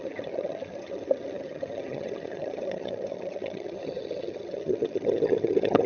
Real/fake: fake